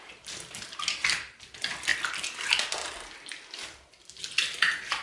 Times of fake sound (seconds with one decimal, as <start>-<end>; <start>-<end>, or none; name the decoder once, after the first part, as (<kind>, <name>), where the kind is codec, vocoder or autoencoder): none